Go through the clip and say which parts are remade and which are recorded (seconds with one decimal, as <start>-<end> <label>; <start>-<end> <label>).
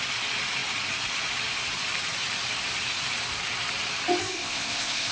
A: 0.0-4.2 recorded; 4.2-5.1 remade